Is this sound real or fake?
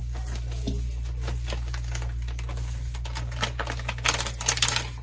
real